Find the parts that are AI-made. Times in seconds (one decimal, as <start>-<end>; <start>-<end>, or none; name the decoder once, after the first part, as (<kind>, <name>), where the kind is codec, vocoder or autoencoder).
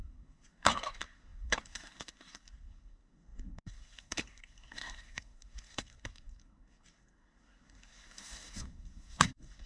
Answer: 0.0-9.7 (codec, SNAC)